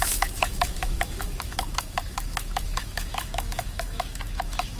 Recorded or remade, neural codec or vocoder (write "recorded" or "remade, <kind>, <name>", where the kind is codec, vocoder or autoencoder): remade, autoencoder, DAC-VAE